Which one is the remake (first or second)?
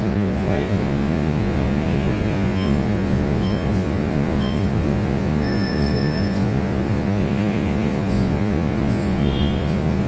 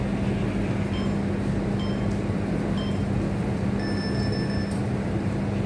first